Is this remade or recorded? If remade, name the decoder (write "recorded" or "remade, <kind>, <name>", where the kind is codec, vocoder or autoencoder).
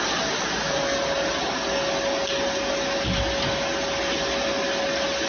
recorded